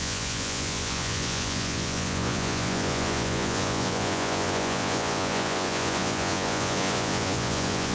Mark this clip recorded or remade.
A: remade